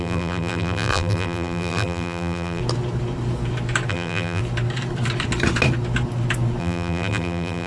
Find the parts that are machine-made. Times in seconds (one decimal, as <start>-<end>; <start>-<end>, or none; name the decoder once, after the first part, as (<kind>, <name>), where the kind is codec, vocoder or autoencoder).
0.0-2.6 (vocoder, BigVGAN v2); 3.9-4.4; 6.6-7.7